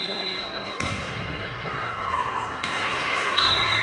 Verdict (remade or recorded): remade